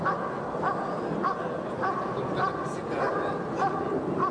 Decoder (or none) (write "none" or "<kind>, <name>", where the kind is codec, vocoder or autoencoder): none